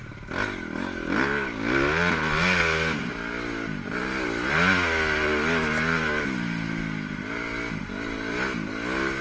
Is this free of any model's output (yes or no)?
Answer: yes